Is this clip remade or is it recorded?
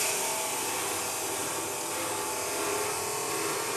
recorded